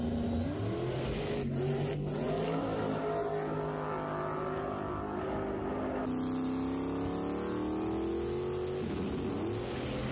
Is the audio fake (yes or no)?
no